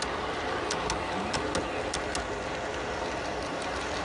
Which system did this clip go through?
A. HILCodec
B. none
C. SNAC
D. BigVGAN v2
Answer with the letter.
B